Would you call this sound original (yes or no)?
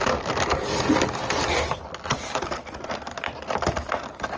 yes